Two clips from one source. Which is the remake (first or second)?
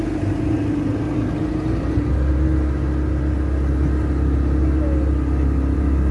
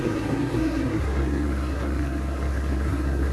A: second